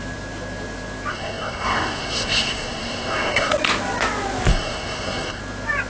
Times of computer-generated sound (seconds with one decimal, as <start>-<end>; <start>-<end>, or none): 1.1-3.5; 4.5-5.4